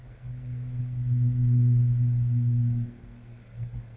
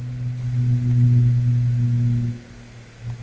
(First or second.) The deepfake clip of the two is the first